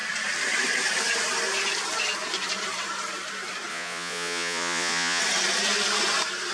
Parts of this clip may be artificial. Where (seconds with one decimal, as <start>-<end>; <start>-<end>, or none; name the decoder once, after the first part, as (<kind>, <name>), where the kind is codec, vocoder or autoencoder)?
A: 3.7-5.2 (vocoder, Vocos)